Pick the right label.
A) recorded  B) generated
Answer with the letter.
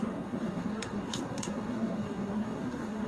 B